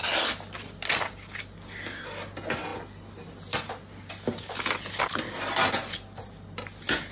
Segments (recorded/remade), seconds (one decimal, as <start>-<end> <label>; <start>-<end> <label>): 0.0-7.1 recorded